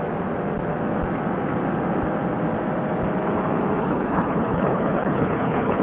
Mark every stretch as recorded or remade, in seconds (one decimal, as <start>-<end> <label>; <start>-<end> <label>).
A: 0.0-3.8 recorded; 3.8-5.8 remade